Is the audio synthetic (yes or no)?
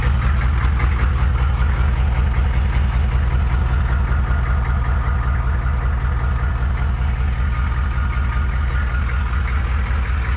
no